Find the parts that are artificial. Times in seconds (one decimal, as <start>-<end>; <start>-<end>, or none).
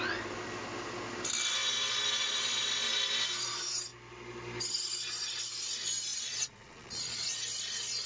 6.1-7.4